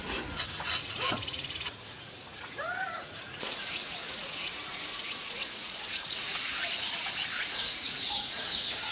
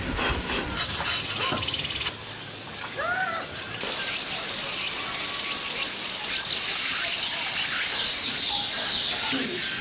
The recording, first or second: second